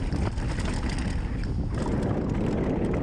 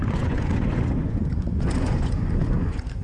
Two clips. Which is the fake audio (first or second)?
second